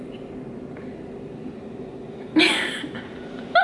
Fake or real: real